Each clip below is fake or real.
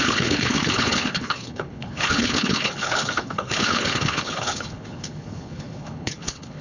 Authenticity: fake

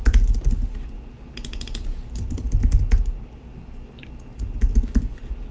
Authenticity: real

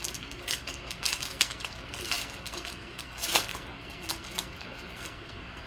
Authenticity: fake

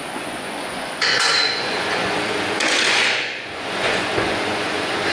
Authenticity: fake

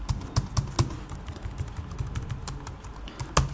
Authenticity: real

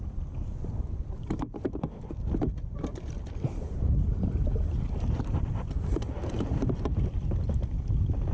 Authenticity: fake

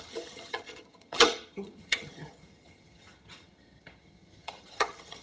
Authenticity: fake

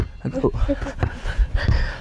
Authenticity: real